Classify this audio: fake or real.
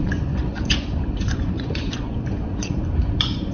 fake